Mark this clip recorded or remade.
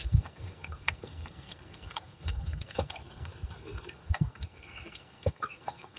remade